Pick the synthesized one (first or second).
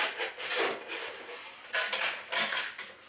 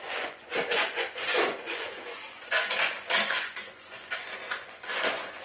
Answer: second